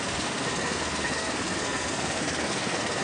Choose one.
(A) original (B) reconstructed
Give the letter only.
B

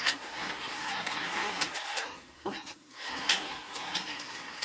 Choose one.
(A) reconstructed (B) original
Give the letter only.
A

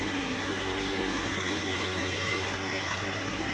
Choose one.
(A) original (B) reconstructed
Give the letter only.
B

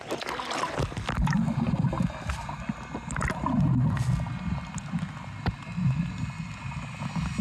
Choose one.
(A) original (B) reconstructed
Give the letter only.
A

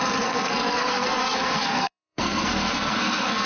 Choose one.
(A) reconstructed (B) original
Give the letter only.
A